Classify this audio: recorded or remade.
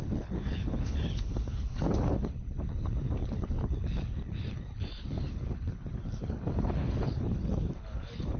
remade